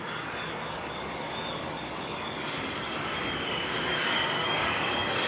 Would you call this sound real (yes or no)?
no